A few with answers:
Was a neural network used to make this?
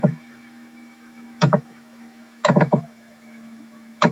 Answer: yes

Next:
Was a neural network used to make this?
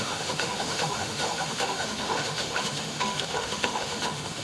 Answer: yes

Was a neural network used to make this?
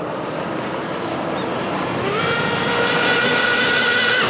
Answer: no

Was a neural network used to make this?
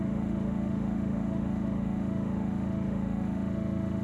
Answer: yes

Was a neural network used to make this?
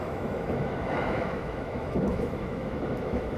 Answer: yes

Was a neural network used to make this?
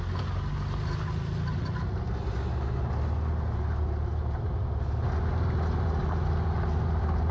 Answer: no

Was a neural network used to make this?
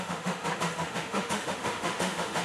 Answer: yes